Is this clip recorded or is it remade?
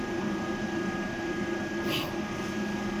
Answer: recorded